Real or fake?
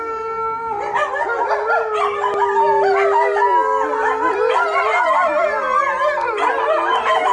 real